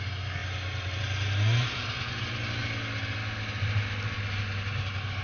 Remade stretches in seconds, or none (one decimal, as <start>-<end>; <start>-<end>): none